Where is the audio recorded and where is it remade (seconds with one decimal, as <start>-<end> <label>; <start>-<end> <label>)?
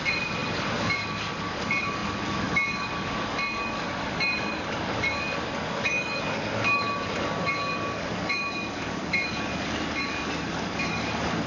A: 0.0-11.5 remade